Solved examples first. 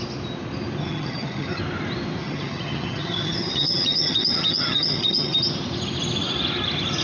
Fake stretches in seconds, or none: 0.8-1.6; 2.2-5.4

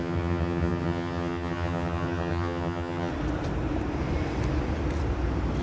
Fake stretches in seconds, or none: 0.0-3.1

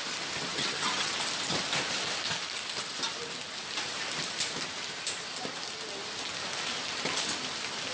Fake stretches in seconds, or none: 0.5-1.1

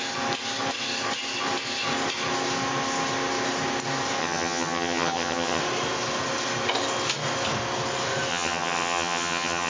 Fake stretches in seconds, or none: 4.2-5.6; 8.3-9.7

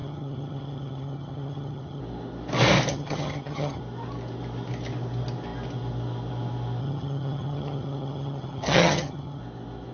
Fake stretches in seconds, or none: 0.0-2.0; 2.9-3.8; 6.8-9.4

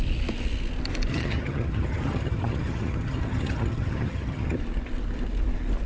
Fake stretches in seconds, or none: 1.1-4.6